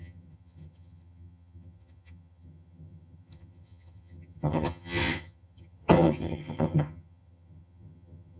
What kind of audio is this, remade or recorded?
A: remade